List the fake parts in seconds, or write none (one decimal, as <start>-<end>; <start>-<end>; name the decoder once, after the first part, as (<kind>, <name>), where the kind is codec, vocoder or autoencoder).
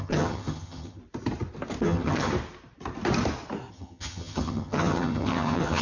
0.0-1.0 (vocoder, HiFi-GAN); 1.8-2.3; 3.7-5.8